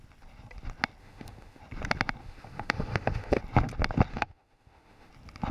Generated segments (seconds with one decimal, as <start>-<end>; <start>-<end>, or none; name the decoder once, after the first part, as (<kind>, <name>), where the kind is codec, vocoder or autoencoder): 1.0-1.6 (autoencoder, DAC-VAE); 2.2-3.4; 4.1-5.1